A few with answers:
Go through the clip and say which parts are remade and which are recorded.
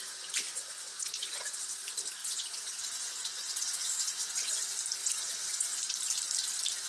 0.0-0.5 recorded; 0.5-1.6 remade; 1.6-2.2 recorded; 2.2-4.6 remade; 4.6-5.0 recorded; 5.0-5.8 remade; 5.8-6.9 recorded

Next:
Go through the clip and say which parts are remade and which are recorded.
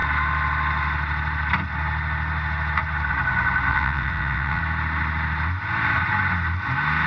0.0-3.7 recorded; 3.7-4.6 remade; 4.6-7.1 recorded